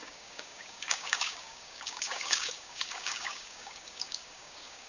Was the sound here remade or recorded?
remade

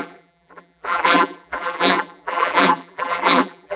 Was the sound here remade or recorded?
remade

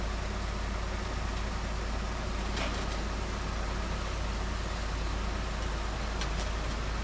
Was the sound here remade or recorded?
recorded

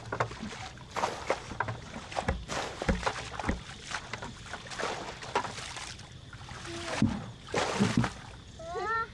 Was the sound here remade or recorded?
recorded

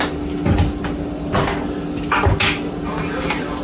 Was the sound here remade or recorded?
recorded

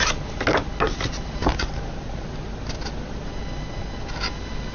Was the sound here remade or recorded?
recorded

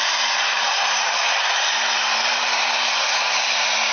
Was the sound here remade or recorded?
recorded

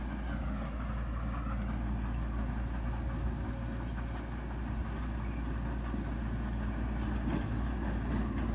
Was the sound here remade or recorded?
recorded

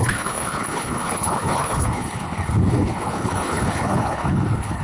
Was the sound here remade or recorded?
remade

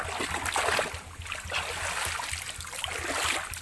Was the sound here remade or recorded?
recorded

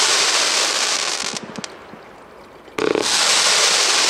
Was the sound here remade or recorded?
recorded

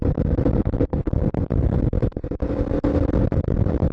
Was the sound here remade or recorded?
recorded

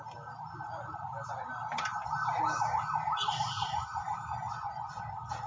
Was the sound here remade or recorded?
recorded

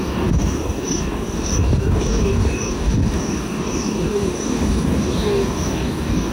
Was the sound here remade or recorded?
remade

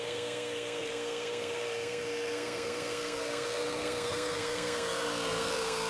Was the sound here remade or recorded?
remade